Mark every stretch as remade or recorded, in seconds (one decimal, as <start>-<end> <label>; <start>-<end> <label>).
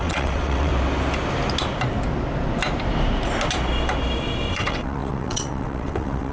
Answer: 0.0-0.7 remade; 0.7-4.5 recorded; 4.5-6.3 remade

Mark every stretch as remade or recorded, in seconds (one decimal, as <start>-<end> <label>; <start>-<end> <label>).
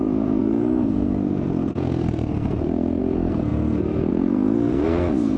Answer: 0.0-5.4 remade